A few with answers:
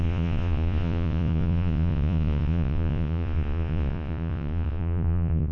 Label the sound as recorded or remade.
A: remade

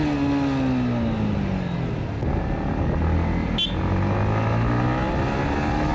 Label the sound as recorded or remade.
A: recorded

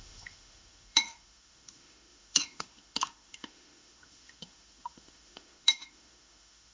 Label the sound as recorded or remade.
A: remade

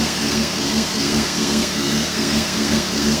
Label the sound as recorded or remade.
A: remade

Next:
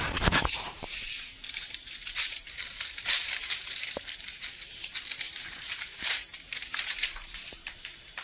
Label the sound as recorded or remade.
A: remade